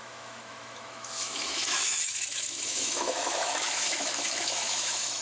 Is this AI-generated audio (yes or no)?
yes